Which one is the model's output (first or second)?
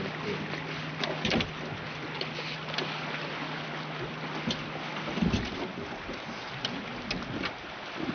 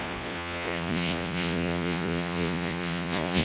second